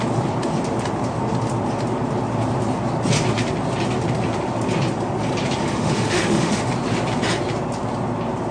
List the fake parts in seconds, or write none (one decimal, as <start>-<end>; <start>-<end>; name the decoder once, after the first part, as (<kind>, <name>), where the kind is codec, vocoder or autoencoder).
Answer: 5.6-6.7 (autoencoder, DAC-VAE)